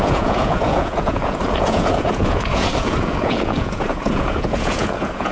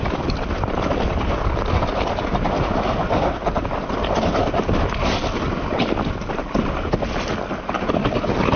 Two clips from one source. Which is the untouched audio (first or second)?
second